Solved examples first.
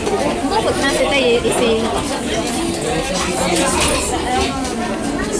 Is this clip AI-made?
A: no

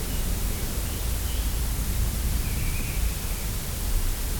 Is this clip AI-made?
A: yes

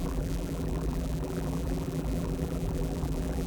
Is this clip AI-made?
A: yes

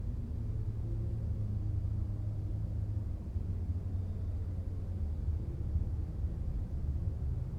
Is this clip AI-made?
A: no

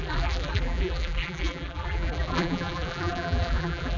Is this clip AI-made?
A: yes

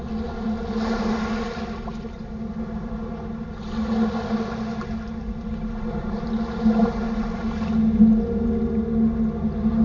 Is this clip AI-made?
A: no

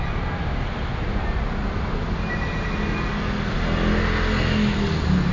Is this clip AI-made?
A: no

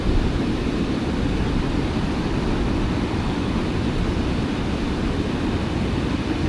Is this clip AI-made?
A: no